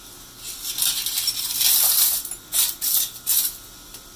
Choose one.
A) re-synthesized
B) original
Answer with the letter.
B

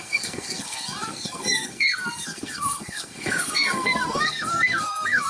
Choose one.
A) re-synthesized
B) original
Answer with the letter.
A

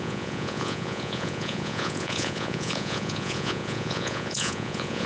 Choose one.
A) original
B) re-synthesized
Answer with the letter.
B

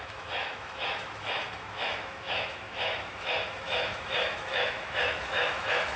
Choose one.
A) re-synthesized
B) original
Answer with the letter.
A